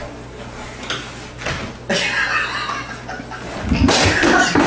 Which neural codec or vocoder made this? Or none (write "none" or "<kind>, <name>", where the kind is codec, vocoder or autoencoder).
none